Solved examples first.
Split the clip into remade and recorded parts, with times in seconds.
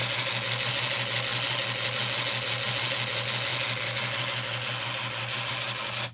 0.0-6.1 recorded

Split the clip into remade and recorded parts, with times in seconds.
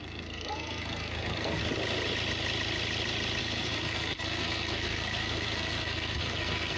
0.0-1.6 remade; 1.6-3.4 recorded; 3.4-6.8 remade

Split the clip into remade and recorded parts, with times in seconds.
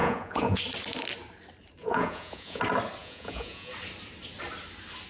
0.0-0.6 remade; 0.6-1.8 recorded; 1.8-2.6 remade; 2.6-3.0 recorded; 3.0-3.7 remade; 3.7-5.1 recorded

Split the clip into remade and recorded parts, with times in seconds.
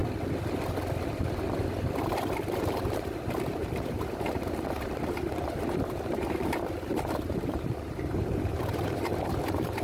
0.0-2.0 recorded; 2.0-9.8 remade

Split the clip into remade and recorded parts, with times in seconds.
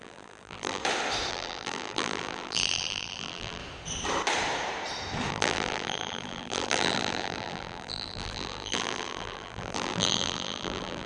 0.0-0.8 remade; 0.8-1.3 recorded; 1.3-3.6 remade; 3.6-5.3 recorded; 5.3-11.1 remade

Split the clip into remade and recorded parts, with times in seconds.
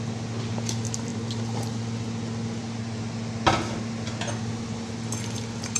0.0-5.8 recorded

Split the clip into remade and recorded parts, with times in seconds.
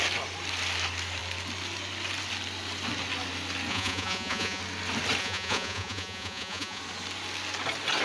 0.0-3.7 recorded; 3.7-4.6 remade; 4.6-5.2 recorded; 5.2-6.8 remade; 6.8-8.0 recorded